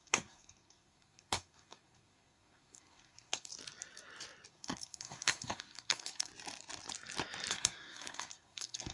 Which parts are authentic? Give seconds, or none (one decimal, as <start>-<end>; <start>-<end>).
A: 3.5-4.5; 6.3-7.5